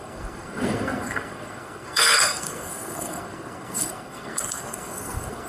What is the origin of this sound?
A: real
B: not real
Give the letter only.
B